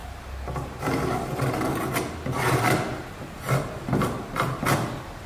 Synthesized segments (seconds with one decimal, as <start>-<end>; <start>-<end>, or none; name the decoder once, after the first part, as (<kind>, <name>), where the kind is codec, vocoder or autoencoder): 3.2-5.3 (vocoder, BigVGAN v2)